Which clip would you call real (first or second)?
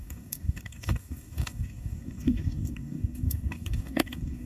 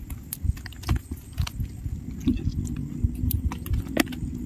second